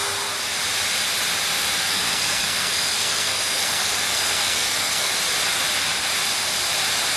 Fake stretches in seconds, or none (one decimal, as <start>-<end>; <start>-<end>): 1.8-5.1